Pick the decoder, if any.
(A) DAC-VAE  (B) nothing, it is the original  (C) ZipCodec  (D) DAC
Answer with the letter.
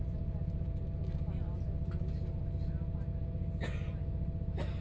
B